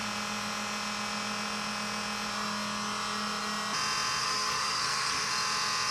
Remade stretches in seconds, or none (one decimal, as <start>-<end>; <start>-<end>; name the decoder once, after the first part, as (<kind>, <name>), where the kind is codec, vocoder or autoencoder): 4.2-5.3 (codec, SNAC)